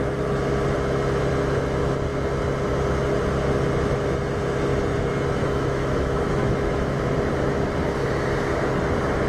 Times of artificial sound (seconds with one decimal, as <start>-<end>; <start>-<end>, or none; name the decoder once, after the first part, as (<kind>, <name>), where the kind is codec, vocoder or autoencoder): 5.4-7.1 (autoencoder, DAC-VAE)